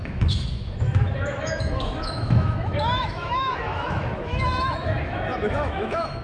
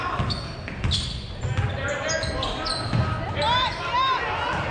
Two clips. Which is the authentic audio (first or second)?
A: second